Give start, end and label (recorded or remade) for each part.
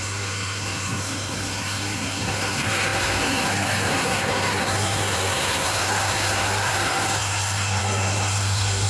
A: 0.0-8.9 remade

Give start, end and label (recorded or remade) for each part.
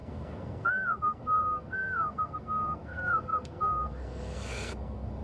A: 0.0-5.2 remade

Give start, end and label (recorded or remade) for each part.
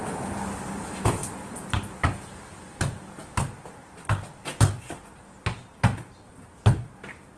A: 0.0-7.4 recorded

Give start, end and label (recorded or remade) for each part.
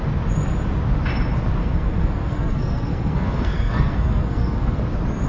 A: 0.0-1.6 recorded; 1.6-4.8 remade; 4.8-5.3 recorded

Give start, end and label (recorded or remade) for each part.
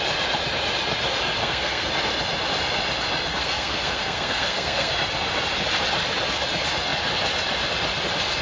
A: 0.0-1.4 recorded; 1.4-1.9 remade; 1.9-3.4 recorded; 3.4-4.9 remade; 4.9-8.4 recorded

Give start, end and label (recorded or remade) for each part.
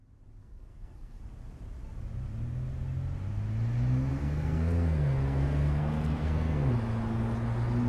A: 0.0-0.4 recorded; 0.4-1.2 remade; 1.2-4.1 recorded; 4.1-6.7 remade; 6.7-7.9 recorded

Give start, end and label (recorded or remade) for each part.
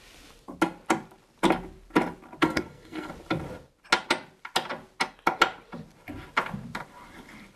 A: 0.0-2.4 recorded; 2.4-3.1 remade; 3.1-7.6 recorded